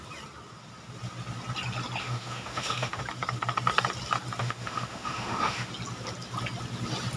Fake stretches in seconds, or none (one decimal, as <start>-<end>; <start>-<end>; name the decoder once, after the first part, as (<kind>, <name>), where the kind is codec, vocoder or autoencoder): 2.0-3.0 (autoencoder, DAC-VAE); 4.4-5.7